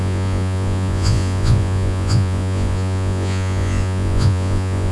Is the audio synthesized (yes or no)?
yes